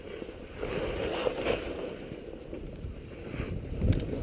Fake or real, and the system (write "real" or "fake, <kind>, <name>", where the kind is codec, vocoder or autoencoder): real